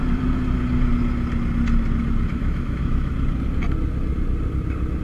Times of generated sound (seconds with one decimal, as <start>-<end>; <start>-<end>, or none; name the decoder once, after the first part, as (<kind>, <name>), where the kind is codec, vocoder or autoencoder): 2.3-3.1 (autoencoder, DAC-VAE)